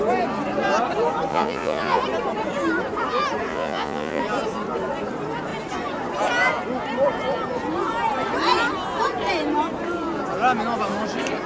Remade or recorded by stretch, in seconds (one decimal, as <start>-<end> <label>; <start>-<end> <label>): 0.0-1.3 recorded; 1.3-2.0 remade; 2.0-3.5 recorded; 3.5-4.2 remade; 4.2-11.5 recorded